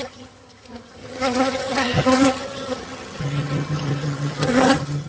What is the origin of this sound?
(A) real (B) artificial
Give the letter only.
B